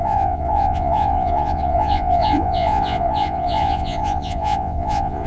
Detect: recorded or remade remade